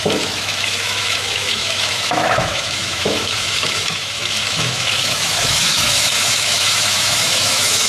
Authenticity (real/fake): fake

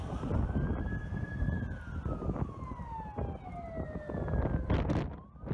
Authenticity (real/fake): real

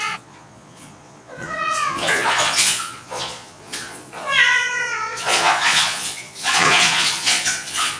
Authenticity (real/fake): fake